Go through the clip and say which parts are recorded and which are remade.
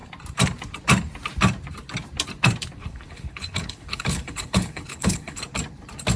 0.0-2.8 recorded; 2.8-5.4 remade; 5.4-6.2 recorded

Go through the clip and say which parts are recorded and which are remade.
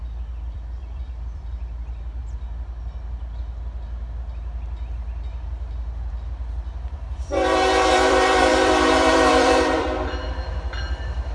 0.0-2.2 remade; 2.2-6.1 recorded; 6.1-11.3 remade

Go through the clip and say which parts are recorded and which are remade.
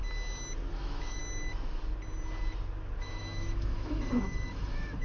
0.0-0.7 recorded; 0.7-1.2 remade; 1.2-3.0 recorded; 3.0-5.0 remade